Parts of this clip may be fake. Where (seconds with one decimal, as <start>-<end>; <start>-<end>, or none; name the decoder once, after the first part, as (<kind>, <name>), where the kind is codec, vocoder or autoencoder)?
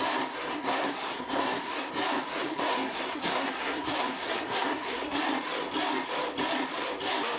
0.5-1.9 (codec, SNAC); 2.4-5.2